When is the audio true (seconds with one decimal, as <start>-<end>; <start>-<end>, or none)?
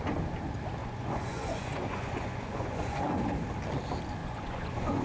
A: 0.0-0.8; 3.2-4.2